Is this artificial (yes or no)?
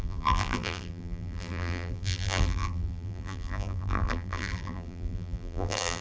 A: yes